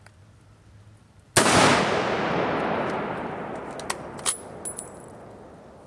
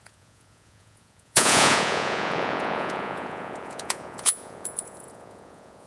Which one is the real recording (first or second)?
first